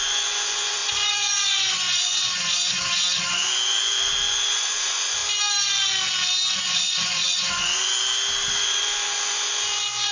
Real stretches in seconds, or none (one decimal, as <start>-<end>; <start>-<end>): 5.2-6.6; 7.9-8.5